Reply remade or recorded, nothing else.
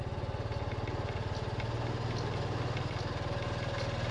recorded